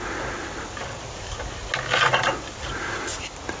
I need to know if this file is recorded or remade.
recorded